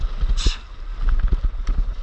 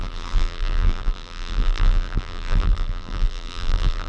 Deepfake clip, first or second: second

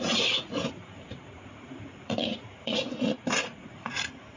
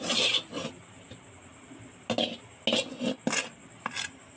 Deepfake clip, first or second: first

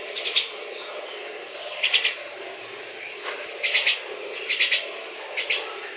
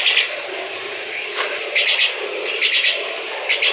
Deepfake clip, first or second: second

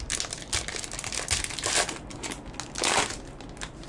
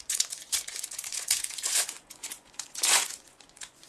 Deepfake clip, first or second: second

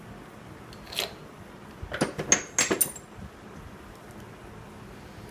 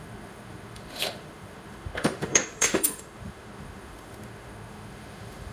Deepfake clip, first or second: second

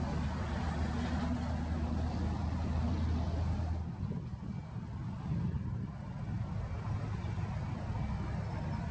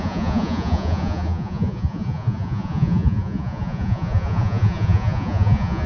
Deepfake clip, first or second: second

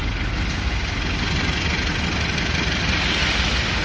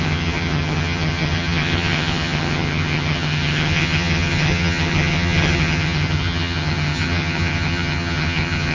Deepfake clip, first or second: second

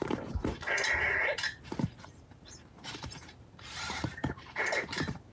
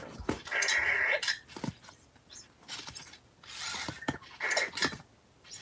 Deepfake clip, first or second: first